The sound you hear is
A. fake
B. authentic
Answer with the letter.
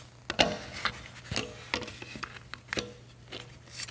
B